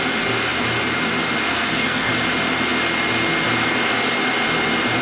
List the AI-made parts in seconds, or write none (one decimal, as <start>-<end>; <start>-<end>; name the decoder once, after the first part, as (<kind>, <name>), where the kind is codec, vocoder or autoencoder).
1.5-2.1 (codec, SNAC)